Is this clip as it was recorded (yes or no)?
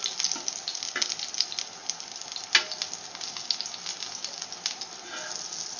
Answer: yes